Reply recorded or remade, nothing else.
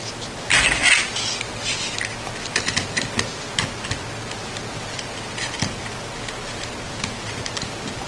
recorded